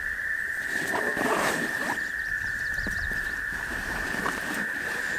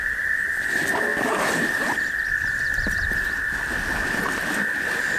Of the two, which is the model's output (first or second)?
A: first